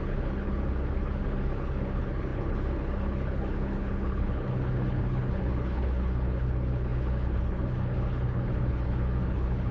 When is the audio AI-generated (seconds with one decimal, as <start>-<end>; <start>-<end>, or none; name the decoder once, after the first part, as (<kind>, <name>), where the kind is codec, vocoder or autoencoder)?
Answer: 0.0-9.7 (codec, HILCodec)